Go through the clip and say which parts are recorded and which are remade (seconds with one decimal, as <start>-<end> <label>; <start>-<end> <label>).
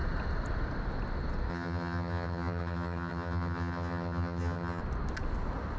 0.0-1.5 recorded; 1.5-4.8 remade; 4.8-5.8 recorded